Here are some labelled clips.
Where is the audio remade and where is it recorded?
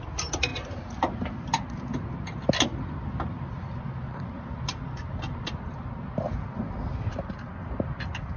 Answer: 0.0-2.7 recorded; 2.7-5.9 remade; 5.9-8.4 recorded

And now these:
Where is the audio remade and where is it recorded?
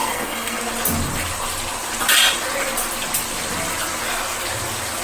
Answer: 0.0-0.6 remade; 0.6-5.0 recorded